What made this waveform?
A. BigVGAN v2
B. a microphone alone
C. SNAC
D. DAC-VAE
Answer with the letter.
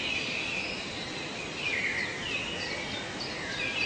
B